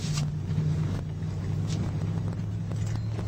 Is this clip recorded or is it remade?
recorded